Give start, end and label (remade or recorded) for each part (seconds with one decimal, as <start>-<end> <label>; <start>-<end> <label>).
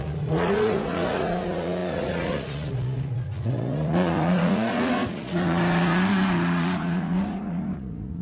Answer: 0.0-8.2 remade